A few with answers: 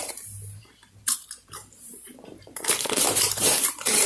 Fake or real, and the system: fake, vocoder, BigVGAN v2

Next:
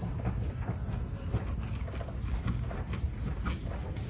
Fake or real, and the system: real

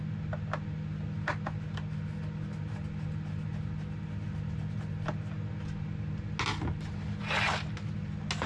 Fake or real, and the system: real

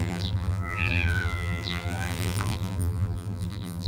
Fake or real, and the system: fake, vocoder, BigVGAN v2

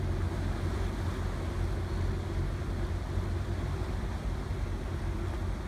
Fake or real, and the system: real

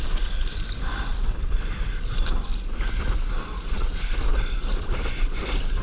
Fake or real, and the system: fake, vocoder, BigVGAN v2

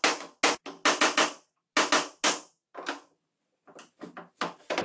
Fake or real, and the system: real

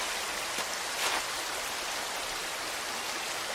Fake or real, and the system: real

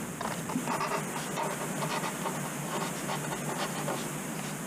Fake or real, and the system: real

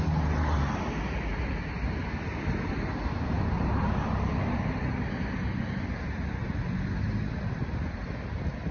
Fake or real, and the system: real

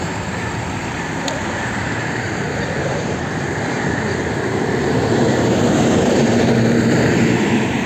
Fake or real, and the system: fake, vocoder, BigVGAN v2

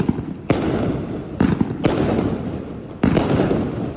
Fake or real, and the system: real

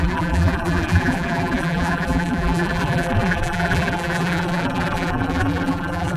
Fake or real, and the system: fake, vocoder, BigVGAN v2